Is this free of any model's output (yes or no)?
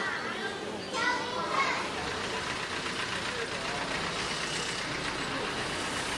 yes